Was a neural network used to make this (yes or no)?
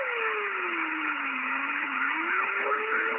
yes